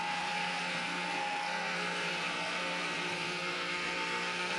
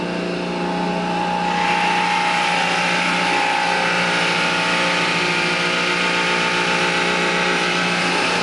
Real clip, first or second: second